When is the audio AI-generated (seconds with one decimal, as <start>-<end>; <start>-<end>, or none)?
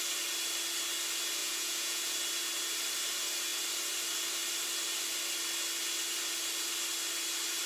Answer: 1.4-2.0